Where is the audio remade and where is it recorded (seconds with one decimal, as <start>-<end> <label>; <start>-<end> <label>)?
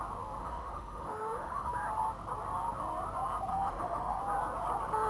0.0-0.4 recorded; 0.4-1.7 remade; 1.7-3.5 recorded; 3.5-4.2 remade; 4.2-5.1 recorded